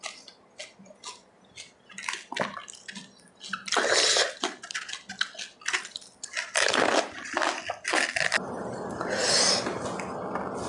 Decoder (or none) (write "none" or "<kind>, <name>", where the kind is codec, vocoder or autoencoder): none